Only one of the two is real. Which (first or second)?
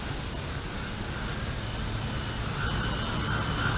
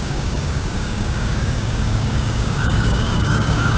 first